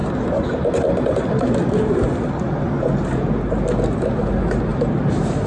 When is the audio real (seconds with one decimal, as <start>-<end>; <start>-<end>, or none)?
0.0-4.7